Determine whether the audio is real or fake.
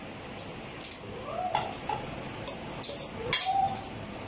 real